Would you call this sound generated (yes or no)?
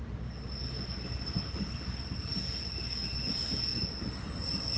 no